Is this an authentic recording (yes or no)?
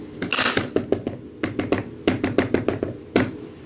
yes